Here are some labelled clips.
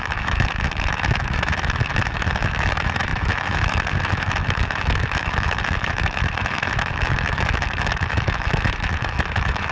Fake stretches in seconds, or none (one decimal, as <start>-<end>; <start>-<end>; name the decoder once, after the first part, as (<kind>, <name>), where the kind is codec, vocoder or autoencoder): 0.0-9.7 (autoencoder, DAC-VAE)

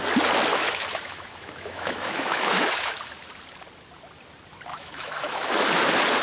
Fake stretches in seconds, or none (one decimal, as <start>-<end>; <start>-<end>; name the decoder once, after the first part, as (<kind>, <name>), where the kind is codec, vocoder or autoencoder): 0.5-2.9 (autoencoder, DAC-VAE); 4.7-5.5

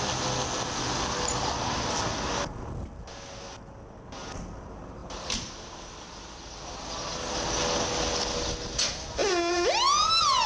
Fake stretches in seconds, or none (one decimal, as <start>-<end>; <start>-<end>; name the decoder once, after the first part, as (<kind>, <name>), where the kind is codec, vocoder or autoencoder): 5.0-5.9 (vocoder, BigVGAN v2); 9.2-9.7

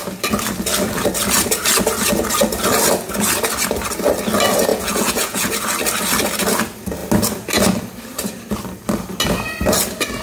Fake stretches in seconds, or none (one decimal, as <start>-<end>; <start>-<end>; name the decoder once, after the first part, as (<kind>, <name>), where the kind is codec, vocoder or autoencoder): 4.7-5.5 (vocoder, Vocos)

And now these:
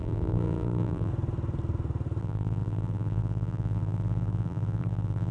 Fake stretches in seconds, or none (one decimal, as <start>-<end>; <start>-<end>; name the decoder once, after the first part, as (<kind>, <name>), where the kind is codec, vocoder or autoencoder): 0.0-1.1 (vocoder, BigVGAN v2); 2.2-5.3

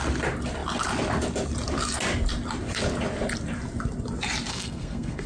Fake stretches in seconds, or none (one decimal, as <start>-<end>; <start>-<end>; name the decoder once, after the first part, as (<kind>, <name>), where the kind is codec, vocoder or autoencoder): 4.5-5.3 (codec, SNAC)

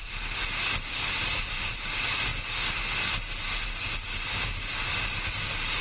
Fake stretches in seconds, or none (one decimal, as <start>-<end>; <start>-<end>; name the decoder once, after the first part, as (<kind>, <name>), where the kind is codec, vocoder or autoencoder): 1.1-2.3 (vocoder, BigVGAN v2); 5.3-5.8

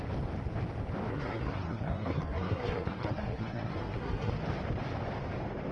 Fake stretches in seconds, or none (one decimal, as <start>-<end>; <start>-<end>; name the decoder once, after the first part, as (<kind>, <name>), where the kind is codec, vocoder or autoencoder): 1.1-4.3 (codec, SNAC)